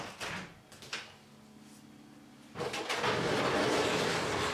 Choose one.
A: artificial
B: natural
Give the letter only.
B